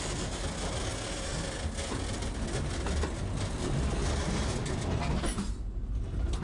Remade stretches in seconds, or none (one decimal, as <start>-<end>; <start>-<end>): none